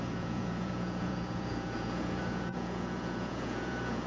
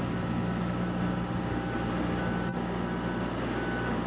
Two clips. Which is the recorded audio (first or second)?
second